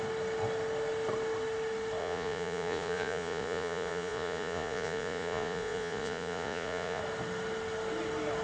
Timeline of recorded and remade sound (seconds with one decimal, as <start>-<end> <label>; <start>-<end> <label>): 0.0-2.0 recorded; 2.0-7.0 remade; 7.0-8.4 recorded